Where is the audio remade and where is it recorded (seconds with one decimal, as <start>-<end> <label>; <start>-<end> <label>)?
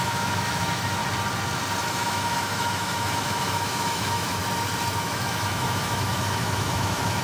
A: 0.0-1.0 remade; 1.0-1.9 recorded; 1.9-4.4 remade; 4.4-5.0 recorded; 5.0-7.2 remade